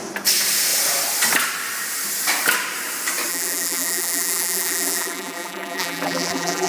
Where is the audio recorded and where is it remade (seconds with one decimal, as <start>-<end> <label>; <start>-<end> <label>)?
0.0-3.3 recorded; 3.3-6.7 remade